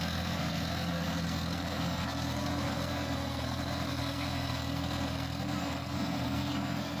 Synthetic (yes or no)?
yes